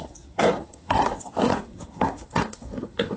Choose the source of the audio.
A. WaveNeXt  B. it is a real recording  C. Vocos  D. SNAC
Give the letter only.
D